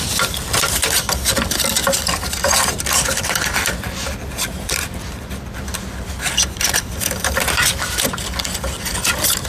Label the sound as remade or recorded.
remade